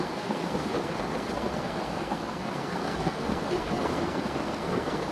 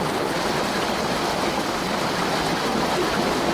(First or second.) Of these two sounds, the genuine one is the second